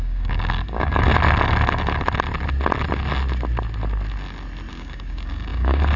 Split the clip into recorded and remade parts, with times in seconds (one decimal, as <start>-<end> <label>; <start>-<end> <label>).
0.0-1.1 remade; 1.1-4.7 recorded; 4.7-6.0 remade